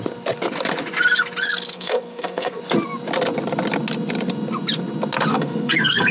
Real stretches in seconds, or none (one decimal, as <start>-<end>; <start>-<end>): 0.0-1.7; 2.6-5.3